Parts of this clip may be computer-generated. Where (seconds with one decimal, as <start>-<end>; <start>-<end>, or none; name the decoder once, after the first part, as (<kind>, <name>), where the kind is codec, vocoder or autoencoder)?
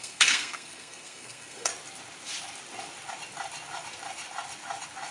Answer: 0.0-1.7 (codec, SNAC)